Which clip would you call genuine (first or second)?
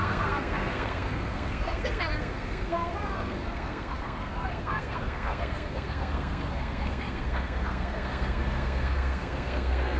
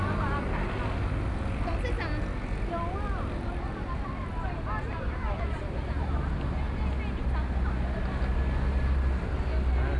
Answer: second